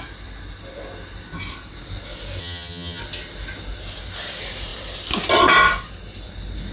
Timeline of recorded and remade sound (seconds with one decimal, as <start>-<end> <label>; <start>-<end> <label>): 0.0-2.4 recorded; 2.4-3.0 remade; 3.0-6.7 recorded